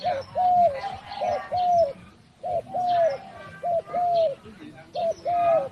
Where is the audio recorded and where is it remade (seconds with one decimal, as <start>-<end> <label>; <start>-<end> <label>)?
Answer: 0.0-5.7 recorded